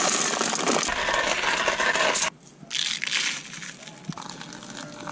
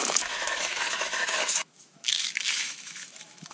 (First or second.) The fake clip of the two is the second